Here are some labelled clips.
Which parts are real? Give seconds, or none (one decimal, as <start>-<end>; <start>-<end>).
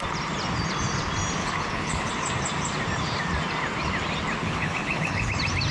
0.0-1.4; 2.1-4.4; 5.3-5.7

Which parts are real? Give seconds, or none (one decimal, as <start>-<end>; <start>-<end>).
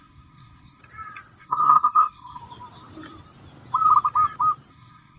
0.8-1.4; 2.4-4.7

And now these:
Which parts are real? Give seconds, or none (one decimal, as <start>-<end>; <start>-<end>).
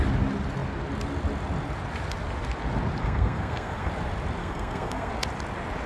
0.0-3.0; 3.9-4.4; 5.1-5.9